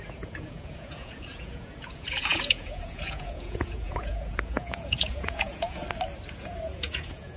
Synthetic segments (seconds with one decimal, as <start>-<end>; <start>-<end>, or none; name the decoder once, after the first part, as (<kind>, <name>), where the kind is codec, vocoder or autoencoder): 0.0-5.8 (vocoder, Vocos); 6.4-7.4